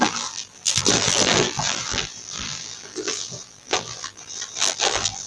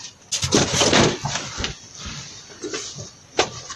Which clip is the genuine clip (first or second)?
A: second